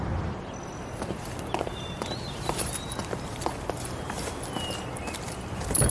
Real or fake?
fake